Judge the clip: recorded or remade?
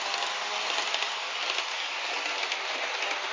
recorded